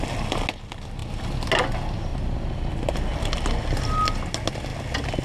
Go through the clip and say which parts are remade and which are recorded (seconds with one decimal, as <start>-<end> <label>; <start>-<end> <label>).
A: 0.0-2.1 recorded; 2.1-2.7 remade; 2.7-5.2 recorded